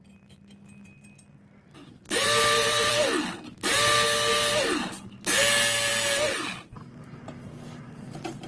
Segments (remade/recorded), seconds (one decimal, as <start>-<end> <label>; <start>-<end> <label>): 0.0-1.8 recorded; 1.8-2.9 remade; 2.9-8.5 recorded